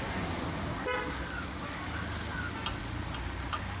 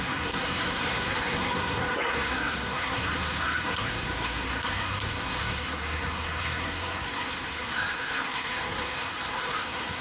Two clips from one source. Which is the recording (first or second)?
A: first